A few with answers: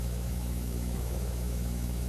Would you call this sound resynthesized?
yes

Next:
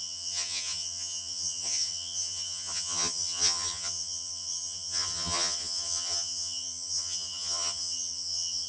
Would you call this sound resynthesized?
yes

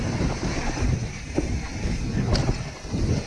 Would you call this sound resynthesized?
no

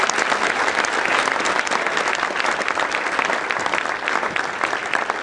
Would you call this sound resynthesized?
no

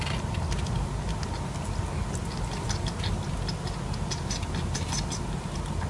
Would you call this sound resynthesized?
no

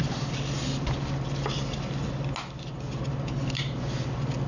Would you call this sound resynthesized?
no